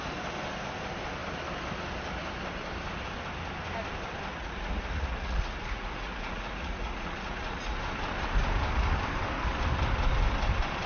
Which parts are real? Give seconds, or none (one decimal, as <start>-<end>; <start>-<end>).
0.0-4.3; 7.8-10.9